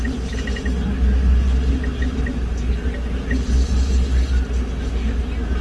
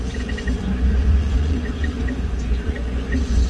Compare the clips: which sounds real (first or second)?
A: first